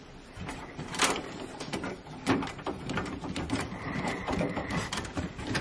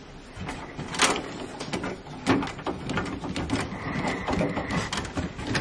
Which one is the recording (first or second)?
second